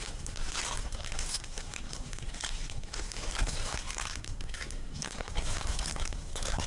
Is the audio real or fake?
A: fake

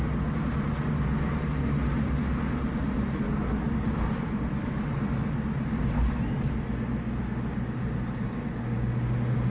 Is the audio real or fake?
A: real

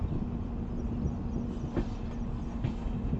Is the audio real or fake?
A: real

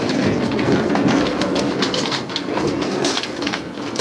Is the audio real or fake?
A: fake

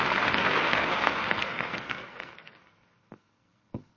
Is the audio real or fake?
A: fake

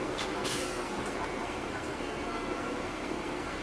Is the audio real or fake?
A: fake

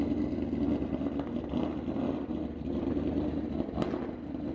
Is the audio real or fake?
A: real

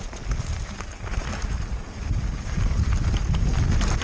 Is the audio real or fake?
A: real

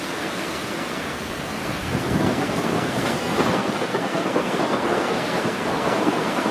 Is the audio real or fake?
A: fake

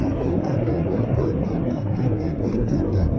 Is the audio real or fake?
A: fake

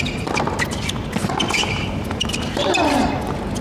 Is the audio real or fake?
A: real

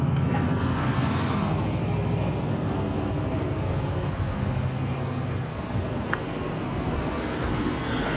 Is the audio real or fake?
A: fake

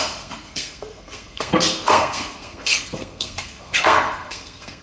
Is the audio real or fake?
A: fake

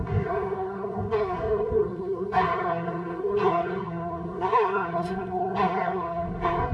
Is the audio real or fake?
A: fake